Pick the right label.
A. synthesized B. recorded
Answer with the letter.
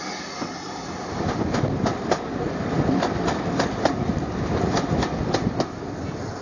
B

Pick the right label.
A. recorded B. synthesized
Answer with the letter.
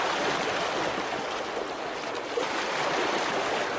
A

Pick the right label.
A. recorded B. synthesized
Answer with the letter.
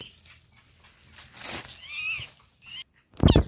A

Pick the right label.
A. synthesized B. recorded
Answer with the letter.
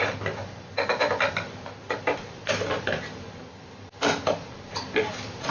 B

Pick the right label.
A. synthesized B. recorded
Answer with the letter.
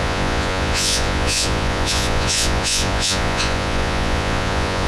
A